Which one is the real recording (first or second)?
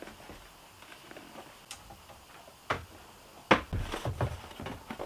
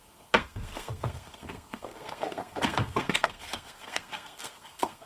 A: first